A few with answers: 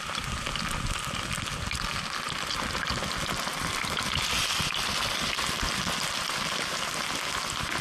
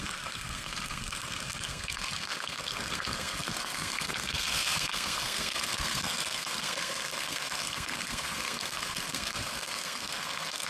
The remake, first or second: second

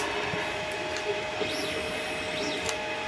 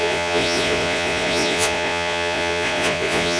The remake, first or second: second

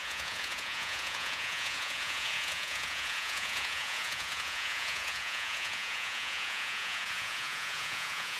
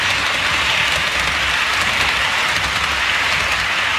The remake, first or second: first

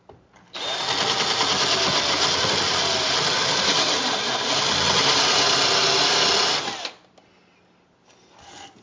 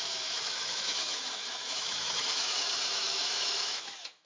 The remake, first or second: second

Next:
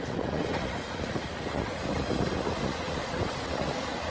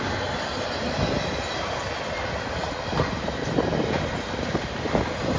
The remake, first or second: first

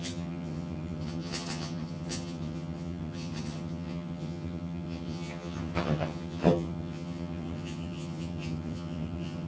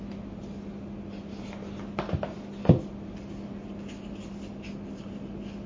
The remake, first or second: first